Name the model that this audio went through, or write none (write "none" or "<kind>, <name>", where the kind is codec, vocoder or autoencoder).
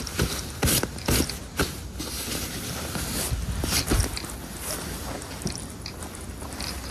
none